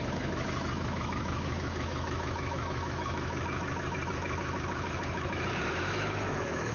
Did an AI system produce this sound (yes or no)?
yes